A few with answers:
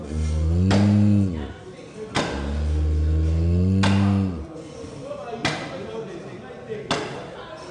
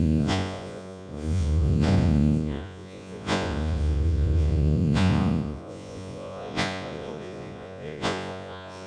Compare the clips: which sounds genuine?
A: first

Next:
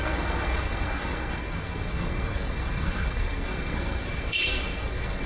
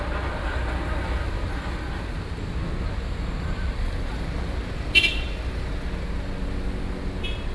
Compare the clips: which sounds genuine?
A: second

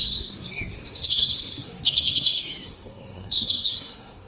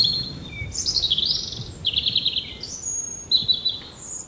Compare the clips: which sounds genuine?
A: second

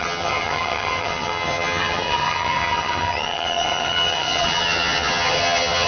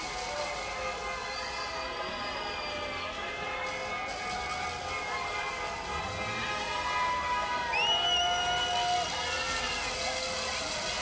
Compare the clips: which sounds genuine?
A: second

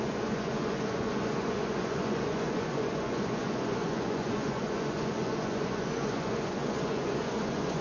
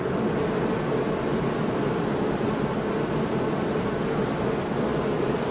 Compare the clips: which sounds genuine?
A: second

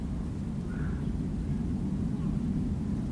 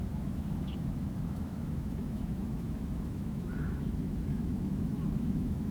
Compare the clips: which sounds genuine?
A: first